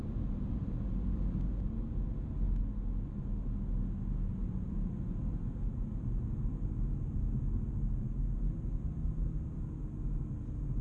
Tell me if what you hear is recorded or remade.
recorded